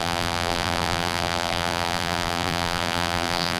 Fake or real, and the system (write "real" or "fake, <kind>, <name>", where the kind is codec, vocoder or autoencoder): fake, vocoder, BigVGAN v2